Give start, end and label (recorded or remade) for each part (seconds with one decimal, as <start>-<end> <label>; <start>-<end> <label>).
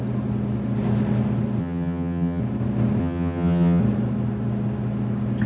0.0-1.6 recorded; 1.6-2.4 remade; 2.4-3.0 recorded; 3.0-3.8 remade; 3.8-5.5 recorded